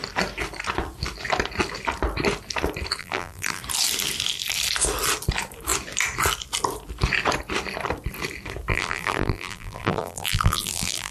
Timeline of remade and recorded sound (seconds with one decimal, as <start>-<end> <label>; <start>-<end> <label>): 0.0-3.0 recorded; 3.0-3.6 remade; 3.6-8.7 recorded; 8.7-11.1 remade